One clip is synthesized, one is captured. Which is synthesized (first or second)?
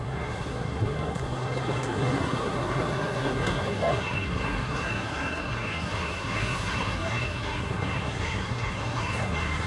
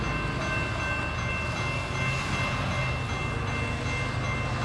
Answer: first